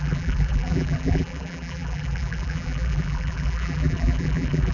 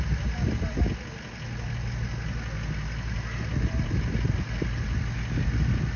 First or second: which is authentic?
second